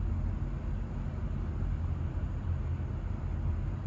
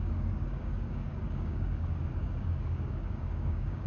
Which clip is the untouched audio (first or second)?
first